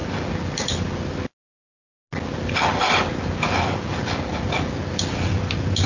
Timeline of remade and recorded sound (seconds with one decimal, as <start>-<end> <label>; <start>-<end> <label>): 0.0-5.9 recorded